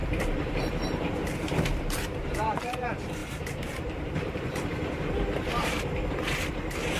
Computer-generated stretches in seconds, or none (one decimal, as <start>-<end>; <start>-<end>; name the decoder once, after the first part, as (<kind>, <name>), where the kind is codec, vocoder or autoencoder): 0.0-1.2 (vocoder, BigVGAN v2); 1.8-7.0